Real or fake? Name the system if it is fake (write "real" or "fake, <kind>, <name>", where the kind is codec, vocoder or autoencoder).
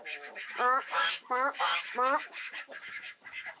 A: fake, autoencoder, DAC-VAE